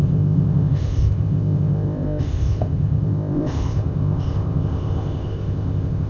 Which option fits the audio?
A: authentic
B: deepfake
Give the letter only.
B